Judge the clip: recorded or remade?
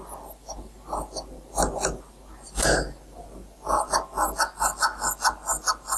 recorded